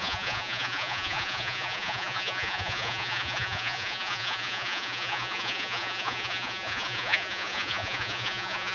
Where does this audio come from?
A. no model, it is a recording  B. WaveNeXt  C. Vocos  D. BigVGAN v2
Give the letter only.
C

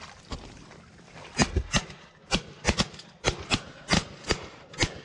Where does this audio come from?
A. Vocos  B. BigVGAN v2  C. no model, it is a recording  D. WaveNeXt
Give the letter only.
C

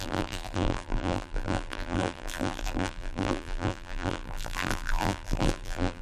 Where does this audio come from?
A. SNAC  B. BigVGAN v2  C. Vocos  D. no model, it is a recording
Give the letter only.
B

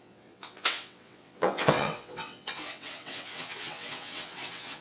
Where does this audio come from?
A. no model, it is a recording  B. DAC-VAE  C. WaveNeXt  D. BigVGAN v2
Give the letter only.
C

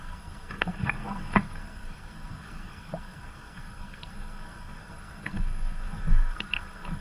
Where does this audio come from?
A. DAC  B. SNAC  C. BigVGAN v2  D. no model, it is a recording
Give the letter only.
B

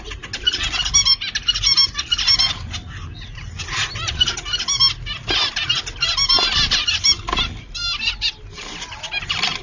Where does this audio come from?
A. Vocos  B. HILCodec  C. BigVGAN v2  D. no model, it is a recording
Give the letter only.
D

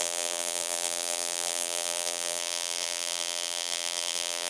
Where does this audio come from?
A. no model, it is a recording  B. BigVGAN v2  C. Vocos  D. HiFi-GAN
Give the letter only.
B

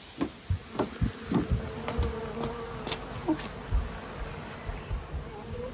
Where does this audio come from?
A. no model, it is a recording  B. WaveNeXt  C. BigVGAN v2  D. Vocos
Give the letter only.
A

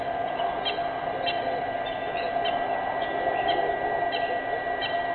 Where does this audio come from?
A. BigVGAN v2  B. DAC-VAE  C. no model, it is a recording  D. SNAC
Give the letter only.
C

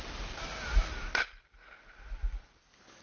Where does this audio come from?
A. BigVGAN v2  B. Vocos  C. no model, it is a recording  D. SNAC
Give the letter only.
C